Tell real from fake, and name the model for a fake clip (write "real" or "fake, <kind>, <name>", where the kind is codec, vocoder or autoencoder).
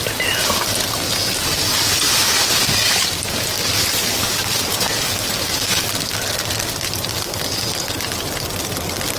real